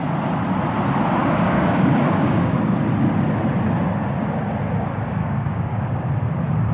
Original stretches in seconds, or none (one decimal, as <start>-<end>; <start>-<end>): 0.0-1.2; 2.8-5.2; 6.1-6.7